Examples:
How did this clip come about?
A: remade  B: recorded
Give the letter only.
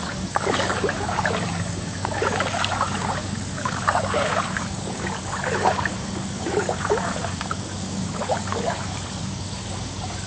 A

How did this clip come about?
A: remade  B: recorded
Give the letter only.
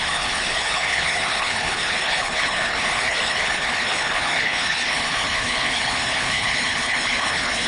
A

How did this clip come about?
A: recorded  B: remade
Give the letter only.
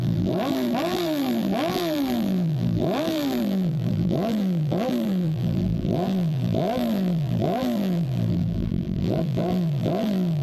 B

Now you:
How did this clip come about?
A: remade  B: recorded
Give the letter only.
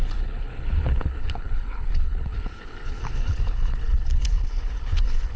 A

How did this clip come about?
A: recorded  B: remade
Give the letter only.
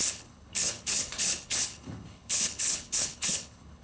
B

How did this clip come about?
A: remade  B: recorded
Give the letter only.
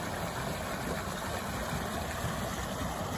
B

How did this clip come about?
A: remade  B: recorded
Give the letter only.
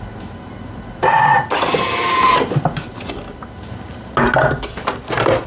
B